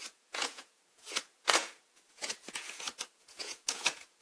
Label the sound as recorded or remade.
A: remade